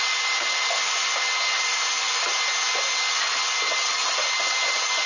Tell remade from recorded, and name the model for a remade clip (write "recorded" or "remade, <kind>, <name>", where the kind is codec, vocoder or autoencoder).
recorded